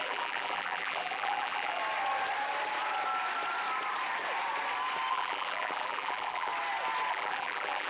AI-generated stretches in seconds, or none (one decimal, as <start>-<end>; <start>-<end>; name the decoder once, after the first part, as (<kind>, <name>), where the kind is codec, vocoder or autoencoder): 0.0-1.8 (vocoder, BigVGAN v2); 5.1-6.5; 7.1-7.9